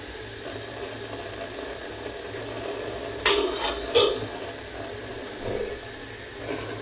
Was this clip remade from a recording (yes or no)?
no